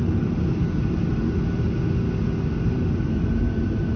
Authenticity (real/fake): real